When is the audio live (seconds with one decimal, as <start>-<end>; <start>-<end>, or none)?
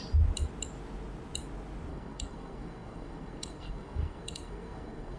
0.0-1.9